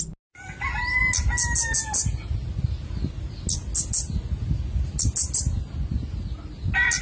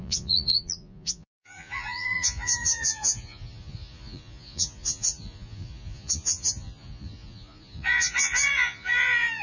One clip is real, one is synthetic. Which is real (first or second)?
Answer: first